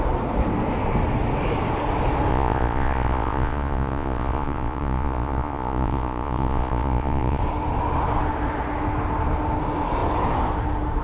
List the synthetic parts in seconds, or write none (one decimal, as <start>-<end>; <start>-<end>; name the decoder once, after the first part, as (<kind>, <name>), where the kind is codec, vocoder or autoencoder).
2.3-7.4 (vocoder, Vocos)